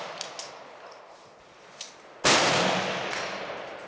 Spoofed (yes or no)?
no